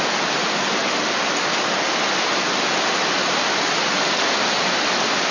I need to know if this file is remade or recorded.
recorded